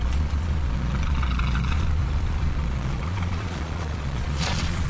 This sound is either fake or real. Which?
fake